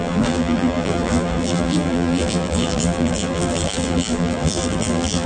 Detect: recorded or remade remade